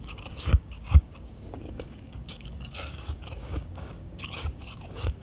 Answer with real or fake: fake